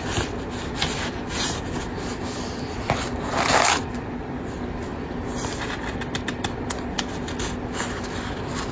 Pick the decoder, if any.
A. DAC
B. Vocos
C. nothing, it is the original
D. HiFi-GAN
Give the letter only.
C